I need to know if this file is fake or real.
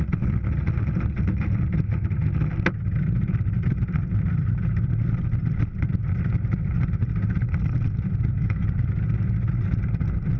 real